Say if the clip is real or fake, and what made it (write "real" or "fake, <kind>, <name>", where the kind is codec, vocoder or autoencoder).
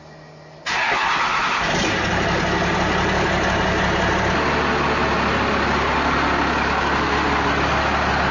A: real